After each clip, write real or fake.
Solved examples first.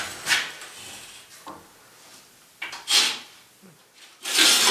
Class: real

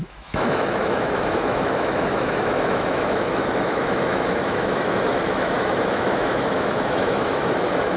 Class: fake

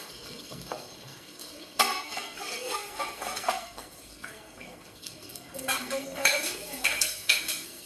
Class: fake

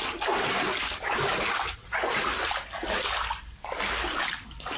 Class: real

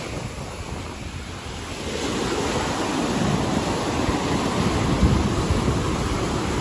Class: real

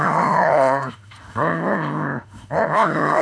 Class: fake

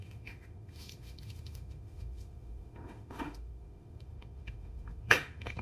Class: fake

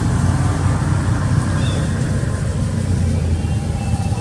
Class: real